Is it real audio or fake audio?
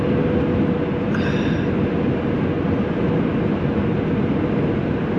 real